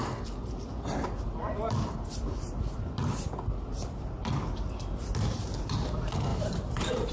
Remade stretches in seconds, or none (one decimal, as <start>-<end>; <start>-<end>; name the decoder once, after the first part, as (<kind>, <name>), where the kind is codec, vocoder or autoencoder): 6.3-7.1 (vocoder, BigVGAN v2)